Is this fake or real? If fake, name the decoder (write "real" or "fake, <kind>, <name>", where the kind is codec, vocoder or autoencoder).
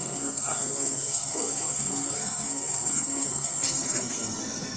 fake, codec, SNAC